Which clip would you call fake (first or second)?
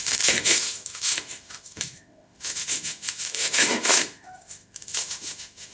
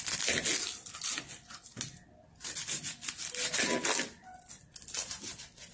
first